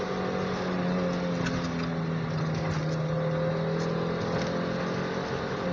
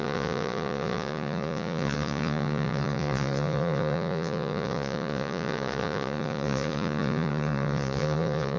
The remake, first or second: second